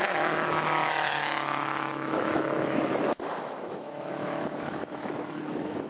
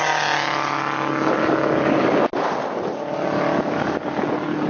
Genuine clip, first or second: second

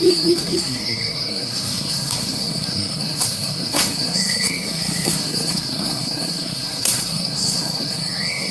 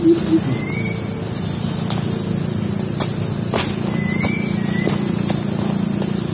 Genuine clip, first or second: second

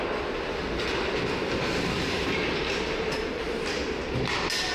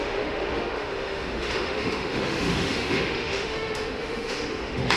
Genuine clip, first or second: first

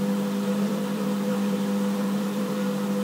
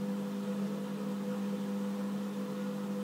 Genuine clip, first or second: second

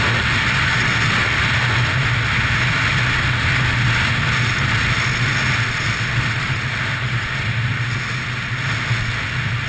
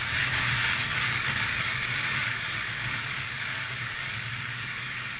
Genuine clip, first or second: first